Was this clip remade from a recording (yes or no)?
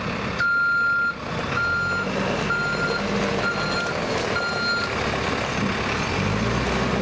no